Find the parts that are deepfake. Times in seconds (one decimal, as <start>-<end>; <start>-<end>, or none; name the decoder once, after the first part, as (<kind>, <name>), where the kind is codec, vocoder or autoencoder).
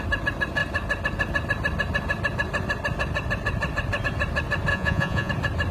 4.7-5.3 (vocoder, Vocos)